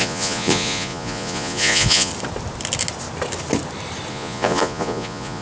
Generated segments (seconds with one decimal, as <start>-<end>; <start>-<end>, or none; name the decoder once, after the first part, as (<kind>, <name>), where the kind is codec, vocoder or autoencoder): 0.0-2.1 (vocoder, Vocos); 4.1-5.4